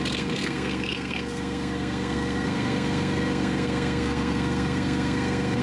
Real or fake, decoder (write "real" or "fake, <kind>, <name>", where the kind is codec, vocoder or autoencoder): fake, codec, SNAC